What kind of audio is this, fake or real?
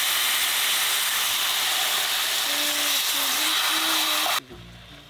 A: real